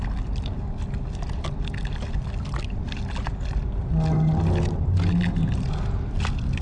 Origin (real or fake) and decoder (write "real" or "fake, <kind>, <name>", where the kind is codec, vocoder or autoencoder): real